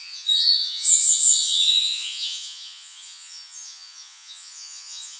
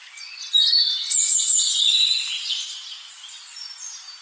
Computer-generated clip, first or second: first